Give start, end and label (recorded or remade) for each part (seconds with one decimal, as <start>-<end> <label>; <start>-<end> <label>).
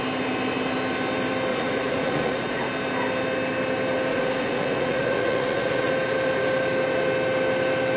0.0-1.5 recorded; 1.5-2.7 remade; 2.7-4.1 recorded; 4.1-5.9 remade; 5.9-8.0 recorded